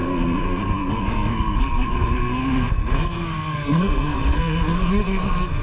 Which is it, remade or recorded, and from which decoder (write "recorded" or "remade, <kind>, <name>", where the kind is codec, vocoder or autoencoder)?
remade, codec, SNAC